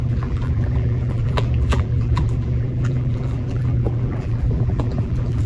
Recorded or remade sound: remade